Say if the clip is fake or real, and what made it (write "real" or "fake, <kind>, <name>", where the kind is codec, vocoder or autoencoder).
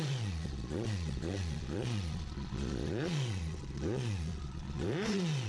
fake, vocoder, Vocos